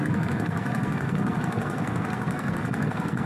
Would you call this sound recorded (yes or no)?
no